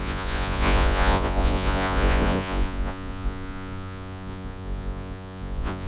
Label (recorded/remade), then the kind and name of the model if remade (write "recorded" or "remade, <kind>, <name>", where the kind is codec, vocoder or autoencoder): remade, vocoder, Vocos